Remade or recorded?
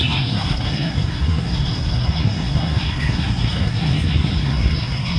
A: remade